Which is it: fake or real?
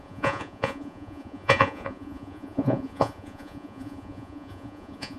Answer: fake